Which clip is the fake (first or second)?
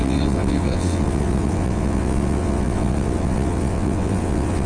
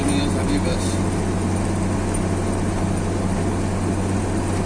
first